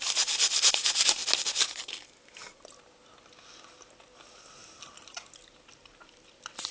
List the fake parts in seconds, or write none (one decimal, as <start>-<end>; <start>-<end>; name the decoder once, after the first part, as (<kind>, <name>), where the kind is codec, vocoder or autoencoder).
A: none